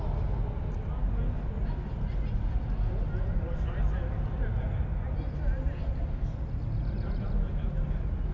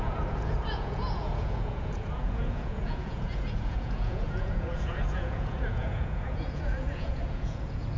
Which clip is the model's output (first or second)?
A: second